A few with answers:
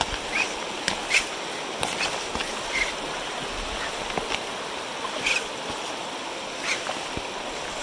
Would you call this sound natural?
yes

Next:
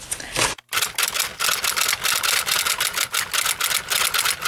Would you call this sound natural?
yes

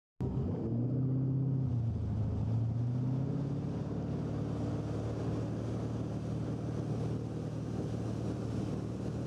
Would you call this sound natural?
yes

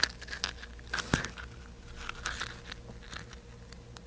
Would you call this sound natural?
yes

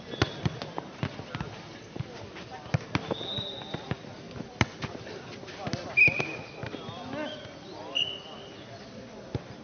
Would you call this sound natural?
yes